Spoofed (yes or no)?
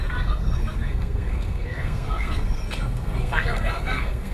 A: yes